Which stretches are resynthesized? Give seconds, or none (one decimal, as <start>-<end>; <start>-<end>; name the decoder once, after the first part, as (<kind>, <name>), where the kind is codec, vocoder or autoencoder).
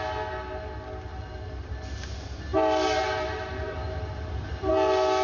1.1-1.7 (vocoder, BigVGAN v2); 3.6-4.7